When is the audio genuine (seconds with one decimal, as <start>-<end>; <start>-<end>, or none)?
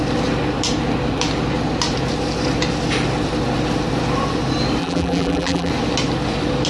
0.0-4.8; 5.7-6.7